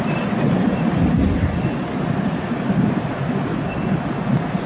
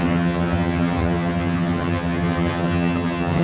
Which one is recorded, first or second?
first